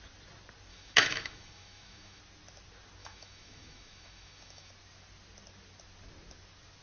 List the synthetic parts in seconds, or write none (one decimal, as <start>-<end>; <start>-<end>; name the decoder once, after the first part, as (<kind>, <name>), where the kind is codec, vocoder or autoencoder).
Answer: 0.7-2.2 (autoencoder, DAC-VAE); 3.0-4.7